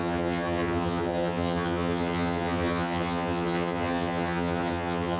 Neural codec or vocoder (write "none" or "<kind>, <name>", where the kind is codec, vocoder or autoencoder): vocoder, HiFi-GAN